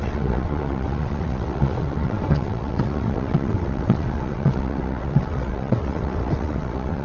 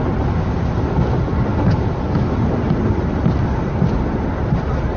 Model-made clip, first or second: first